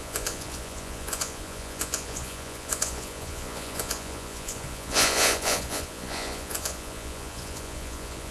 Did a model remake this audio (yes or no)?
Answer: yes